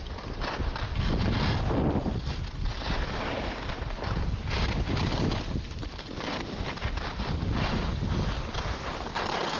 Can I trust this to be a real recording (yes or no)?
yes